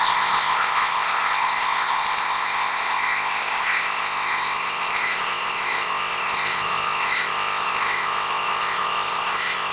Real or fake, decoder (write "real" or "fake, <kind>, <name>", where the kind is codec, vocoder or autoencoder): fake, codec, ZipCodec